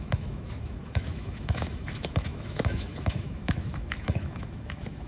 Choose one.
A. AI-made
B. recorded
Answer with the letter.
A